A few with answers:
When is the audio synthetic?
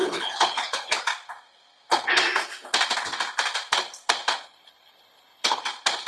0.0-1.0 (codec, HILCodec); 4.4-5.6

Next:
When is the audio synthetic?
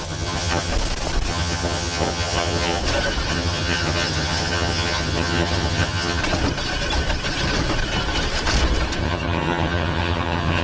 0.0-0.7 (vocoder, HiFi-GAN); 1.3-2.8; 3.3-6.2; 9.0-10.6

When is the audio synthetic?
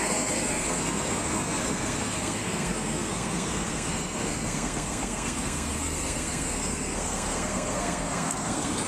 0.0-8.9 (codec, SNAC)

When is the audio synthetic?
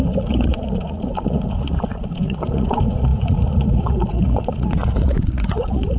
0.0-6.0 (vocoder, Vocos)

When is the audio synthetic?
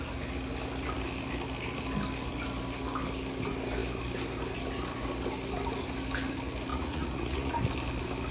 6.7-7.6 (vocoder, Vocos)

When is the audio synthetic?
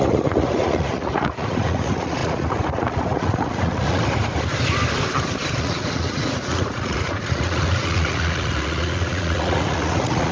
0.0-4.0 (vocoder, Vocos); 5.6-10.3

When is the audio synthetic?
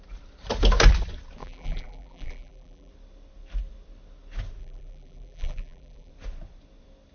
1.4-2.9 (vocoder, BigVGAN v2); 4.6-6.1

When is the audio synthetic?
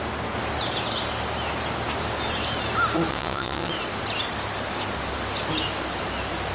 3.1-3.7 (vocoder, WaveNeXt)